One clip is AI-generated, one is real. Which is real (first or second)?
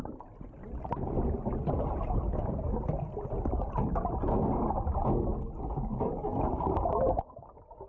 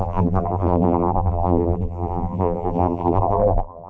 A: first